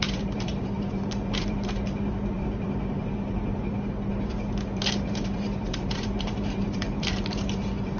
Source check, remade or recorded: remade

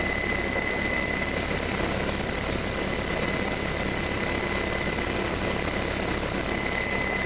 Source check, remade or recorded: recorded